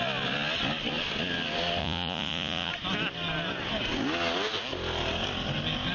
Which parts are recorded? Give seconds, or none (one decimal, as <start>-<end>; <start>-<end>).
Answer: 0.0-1.8; 2.7-5.9